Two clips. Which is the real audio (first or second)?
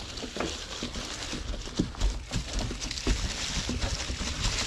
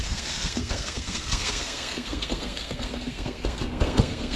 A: first